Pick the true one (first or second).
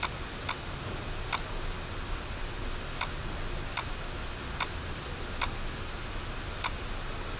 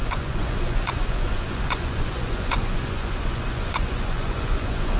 first